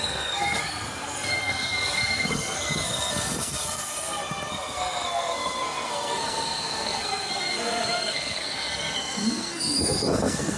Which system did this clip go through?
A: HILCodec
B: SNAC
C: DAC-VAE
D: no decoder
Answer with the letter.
B